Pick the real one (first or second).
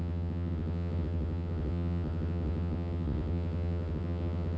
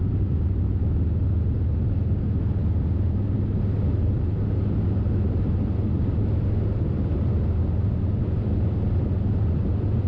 second